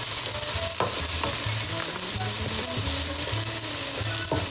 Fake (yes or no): no